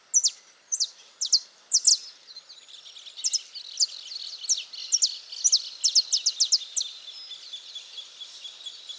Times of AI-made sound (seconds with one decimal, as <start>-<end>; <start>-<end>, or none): none